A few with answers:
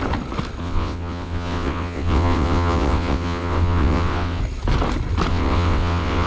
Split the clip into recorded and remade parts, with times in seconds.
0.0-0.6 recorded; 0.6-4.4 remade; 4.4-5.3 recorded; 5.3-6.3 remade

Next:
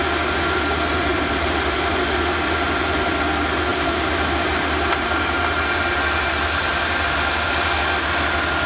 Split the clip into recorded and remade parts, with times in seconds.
0.0-1.0 recorded; 1.0-3.1 remade; 3.1-3.7 recorded; 3.7-7.8 remade; 7.8-8.7 recorded

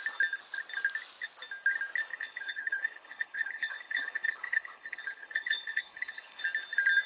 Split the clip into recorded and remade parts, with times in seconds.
0.0-2.1 recorded; 2.1-6.4 remade; 6.4-7.1 recorded

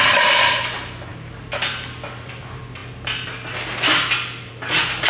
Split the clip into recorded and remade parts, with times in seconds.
0.0-5.1 recorded

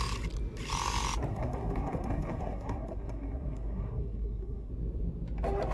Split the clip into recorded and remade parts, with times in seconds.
0.0-1.3 recorded; 1.3-4.7 remade; 4.7-5.7 recorded

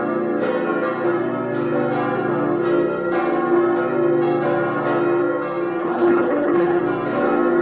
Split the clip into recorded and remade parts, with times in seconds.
0.0-5.8 recorded; 5.8-6.8 remade; 6.8-7.6 recorded

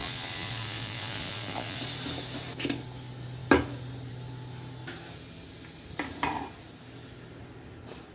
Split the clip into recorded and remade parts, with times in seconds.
0.0-1.8 remade; 1.8-8.1 recorded

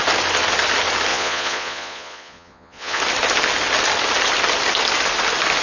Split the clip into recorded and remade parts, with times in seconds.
0.0-1.1 recorded; 1.1-3.0 remade; 3.0-5.6 recorded